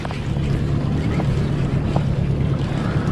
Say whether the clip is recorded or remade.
recorded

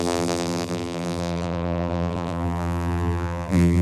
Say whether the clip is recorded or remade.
remade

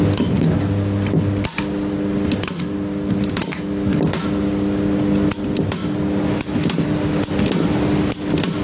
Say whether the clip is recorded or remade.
recorded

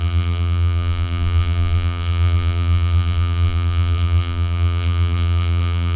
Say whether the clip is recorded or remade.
remade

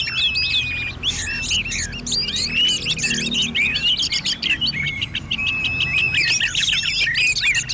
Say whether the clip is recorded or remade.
recorded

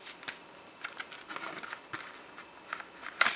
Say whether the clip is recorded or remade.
recorded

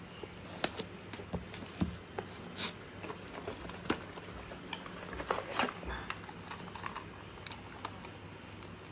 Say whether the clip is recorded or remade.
recorded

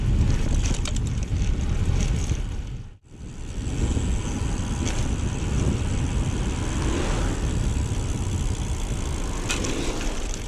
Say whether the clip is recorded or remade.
recorded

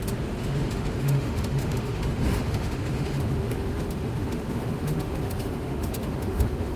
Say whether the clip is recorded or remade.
remade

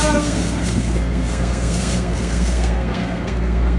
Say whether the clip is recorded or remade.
remade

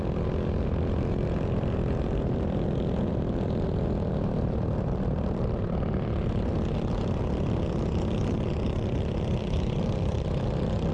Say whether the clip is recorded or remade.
recorded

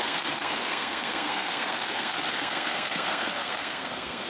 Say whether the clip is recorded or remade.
remade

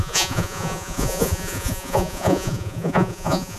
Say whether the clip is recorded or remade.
remade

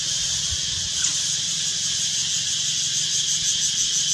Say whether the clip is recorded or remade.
recorded